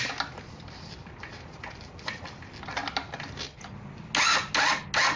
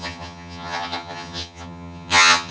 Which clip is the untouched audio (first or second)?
first